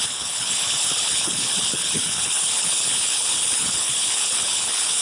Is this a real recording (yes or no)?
no